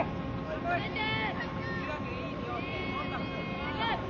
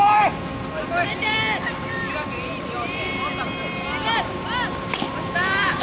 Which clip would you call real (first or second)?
first